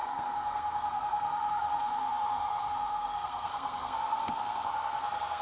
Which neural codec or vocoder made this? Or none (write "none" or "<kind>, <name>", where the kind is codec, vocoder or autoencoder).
codec, SNAC